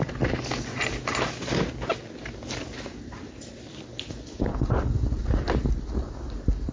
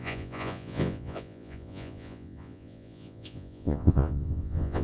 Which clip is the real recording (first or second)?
first